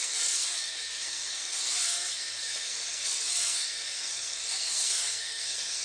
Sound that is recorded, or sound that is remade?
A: remade